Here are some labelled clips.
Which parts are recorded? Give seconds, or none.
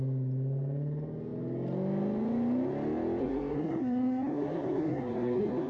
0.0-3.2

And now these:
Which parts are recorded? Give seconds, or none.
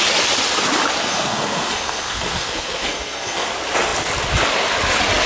0.0-1.0; 3.5-5.3